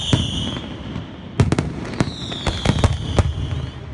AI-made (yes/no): no